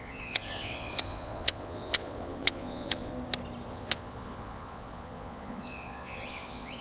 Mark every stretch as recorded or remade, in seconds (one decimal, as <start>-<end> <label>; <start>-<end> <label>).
0.0-3.1 remade; 3.1-3.7 recorded; 3.7-6.8 remade